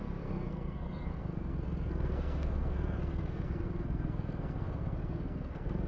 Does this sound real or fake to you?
fake